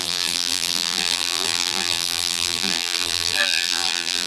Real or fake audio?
fake